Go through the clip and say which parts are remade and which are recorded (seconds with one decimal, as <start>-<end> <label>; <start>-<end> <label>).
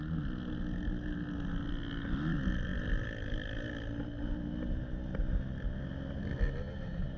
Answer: 0.0-7.2 recorded